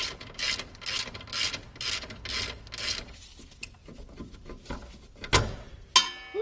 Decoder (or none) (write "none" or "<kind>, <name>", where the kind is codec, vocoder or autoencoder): none